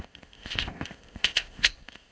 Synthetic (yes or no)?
yes